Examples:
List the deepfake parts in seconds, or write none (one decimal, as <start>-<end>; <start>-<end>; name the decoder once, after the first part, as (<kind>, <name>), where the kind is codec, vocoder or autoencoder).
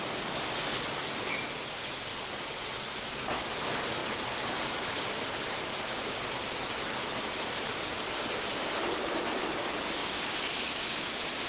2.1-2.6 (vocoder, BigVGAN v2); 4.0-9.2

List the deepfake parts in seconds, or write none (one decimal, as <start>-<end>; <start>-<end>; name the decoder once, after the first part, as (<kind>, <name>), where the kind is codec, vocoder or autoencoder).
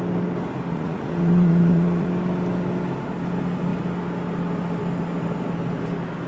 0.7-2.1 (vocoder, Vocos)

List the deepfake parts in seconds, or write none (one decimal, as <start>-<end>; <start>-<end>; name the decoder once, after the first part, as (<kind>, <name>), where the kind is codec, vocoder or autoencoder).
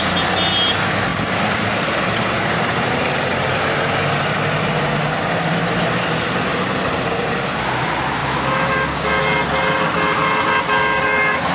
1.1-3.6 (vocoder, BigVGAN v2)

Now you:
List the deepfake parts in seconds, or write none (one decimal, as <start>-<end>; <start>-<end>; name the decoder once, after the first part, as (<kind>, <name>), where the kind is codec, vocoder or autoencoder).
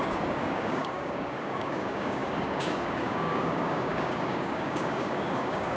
0.0-5.8 (codec, DAC)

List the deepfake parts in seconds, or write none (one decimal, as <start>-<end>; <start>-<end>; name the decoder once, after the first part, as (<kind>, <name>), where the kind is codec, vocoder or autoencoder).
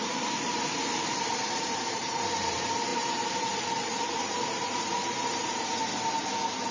0.0-5.9 (vocoder, BigVGAN v2)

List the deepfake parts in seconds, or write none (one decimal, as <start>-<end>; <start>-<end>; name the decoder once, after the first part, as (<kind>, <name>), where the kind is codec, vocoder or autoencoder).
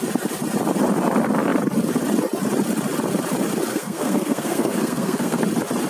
3.7-5.4 (codec, SNAC)